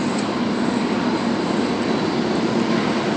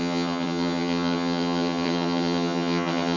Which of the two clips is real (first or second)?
first